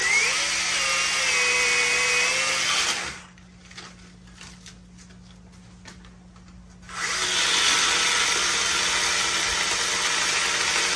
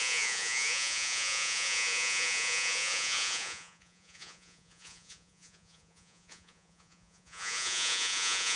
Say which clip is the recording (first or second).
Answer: first